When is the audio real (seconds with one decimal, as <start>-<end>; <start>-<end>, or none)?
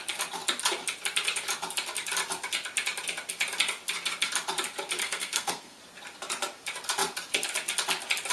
0.0-5.0; 5.8-8.3